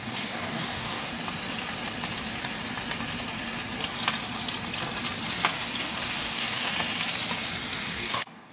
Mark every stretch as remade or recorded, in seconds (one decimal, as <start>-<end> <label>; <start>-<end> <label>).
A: 0.0-1.1 remade; 1.1-5.8 recorded; 5.8-6.7 remade; 6.7-7.9 recorded; 7.9-8.5 remade